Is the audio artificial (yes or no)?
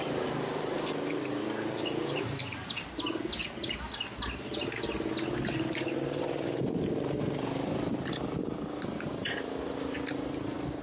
no